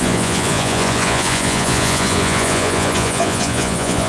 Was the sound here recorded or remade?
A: remade